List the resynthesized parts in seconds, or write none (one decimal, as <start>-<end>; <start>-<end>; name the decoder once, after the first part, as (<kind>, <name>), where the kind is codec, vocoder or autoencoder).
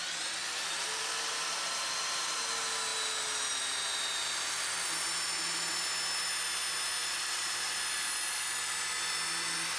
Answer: 0.4-1.0 (vocoder, BigVGAN v2); 7.0-7.8